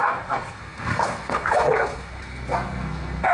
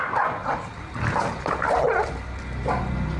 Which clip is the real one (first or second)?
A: second